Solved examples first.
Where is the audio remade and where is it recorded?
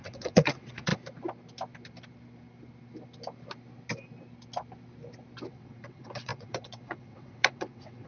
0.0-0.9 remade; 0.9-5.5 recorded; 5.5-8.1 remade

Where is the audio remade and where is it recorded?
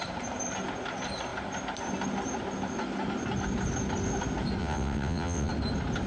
0.0-4.6 recorded; 4.6-5.5 remade; 5.5-6.1 recorded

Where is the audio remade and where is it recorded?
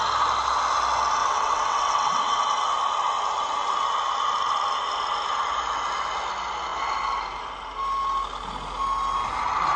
0.0-1.2 recorded; 1.2-2.4 remade; 2.4-9.8 recorded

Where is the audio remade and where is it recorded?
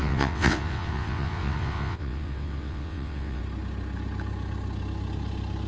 0.0-3.4 remade; 3.4-5.7 recorded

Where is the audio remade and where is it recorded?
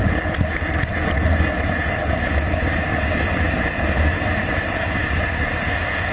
0.0-6.1 recorded